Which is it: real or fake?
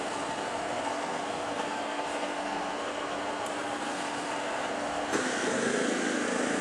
fake